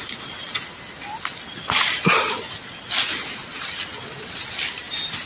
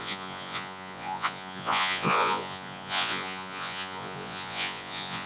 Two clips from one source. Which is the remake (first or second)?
second